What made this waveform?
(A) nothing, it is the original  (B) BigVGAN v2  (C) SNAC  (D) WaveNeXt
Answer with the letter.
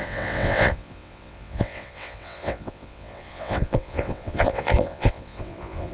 D